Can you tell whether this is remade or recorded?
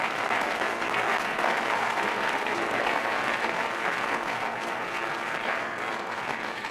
remade